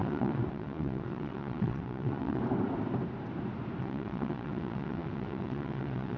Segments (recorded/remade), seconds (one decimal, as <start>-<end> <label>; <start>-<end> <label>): 0.0-2.4 remade; 2.4-3.8 recorded; 3.8-6.2 remade